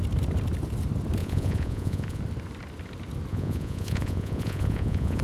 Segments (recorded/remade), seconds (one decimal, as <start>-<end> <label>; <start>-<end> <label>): 0.0-1.2 recorded; 1.2-2.2 remade; 2.2-3.3 recorded; 3.3-5.2 remade